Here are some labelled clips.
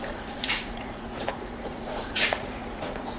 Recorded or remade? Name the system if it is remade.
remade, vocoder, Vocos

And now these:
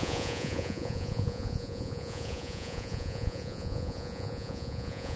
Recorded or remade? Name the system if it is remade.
remade, vocoder, Vocos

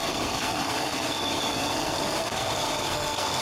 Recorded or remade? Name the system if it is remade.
remade, codec, SNAC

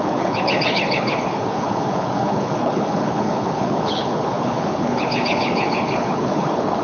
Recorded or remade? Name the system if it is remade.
remade, codec, HILCodec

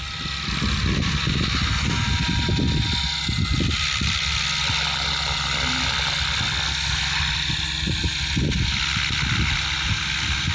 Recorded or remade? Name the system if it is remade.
recorded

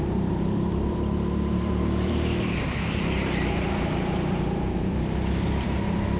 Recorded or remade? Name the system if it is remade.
remade, vocoder, BigVGAN v2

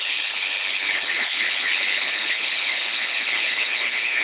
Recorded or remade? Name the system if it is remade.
remade, codec, HILCodec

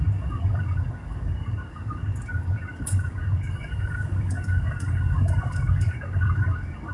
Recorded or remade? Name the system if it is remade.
remade, codec, DAC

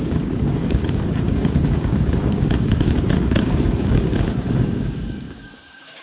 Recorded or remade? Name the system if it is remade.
remade, codec, DAC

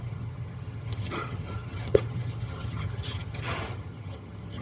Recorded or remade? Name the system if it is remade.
remade, vocoder, HiFi-GAN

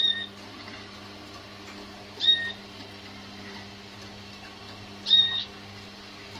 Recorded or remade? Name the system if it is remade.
recorded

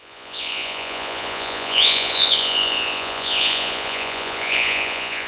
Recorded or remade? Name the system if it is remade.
remade, vocoder, Vocos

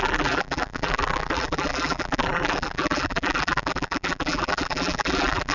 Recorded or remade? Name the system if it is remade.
remade, vocoder, BigVGAN v2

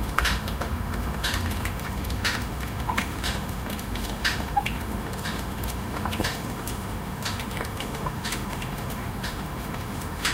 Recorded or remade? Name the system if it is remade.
remade, autoencoder, DAC-VAE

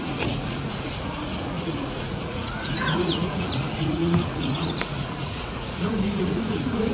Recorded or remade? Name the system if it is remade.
remade, vocoder, Vocos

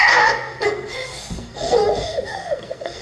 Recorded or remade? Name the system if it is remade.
remade, codec, SNAC